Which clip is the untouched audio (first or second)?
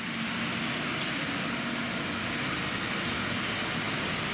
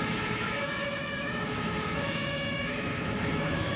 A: first